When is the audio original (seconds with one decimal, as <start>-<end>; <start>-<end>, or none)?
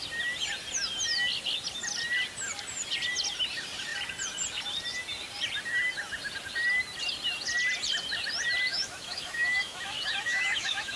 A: 0.0-8.7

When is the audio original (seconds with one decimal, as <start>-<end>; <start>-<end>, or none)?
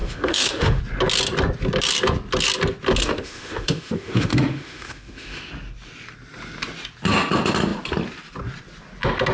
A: 0.8-3.0; 5.5-9.3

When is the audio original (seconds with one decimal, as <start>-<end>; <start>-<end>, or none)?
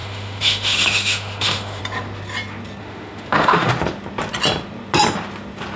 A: 1.8-2.8; 3.7-5.8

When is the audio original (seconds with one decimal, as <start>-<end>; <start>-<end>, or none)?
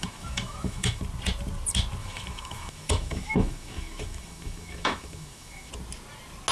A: 1.0-2.0; 5.7-6.5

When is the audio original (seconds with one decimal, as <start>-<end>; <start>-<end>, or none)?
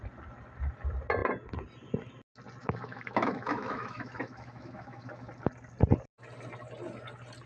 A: 0.0-2.6; 5.3-7.5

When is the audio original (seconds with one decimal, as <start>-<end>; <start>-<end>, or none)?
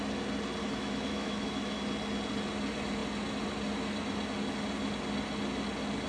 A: 0.0-0.6; 1.8-6.1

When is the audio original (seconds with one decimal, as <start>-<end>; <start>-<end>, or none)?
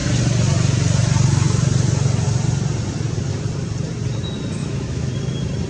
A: 0.0-4.6; 5.1-5.7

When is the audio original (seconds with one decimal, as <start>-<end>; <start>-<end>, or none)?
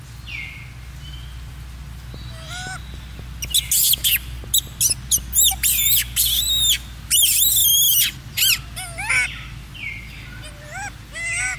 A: 0.0-11.6